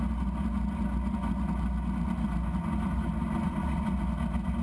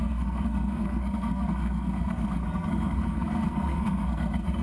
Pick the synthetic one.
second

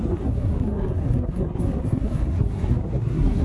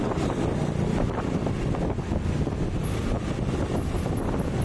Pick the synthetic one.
first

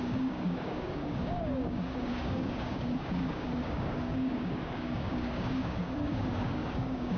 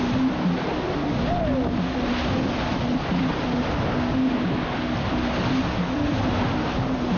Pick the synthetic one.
first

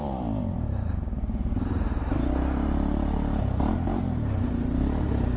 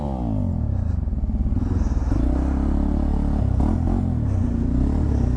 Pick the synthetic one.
first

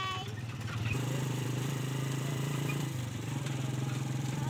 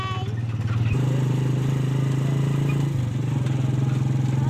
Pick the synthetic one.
first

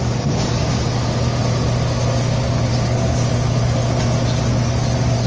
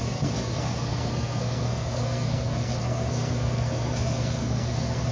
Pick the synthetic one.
second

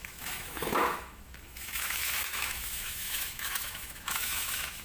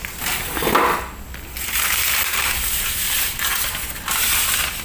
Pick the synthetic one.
first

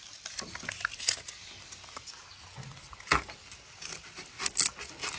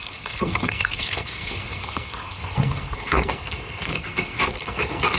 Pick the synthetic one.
second